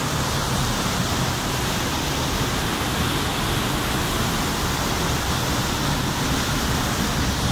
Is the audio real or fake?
real